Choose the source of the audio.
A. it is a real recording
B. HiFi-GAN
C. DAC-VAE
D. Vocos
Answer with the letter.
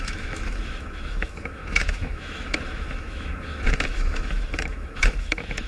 C